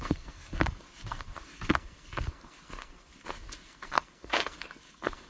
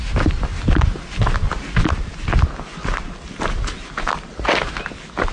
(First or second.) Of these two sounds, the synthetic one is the first